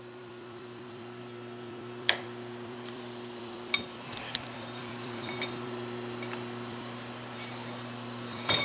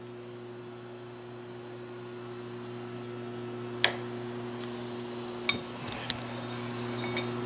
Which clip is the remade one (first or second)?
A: first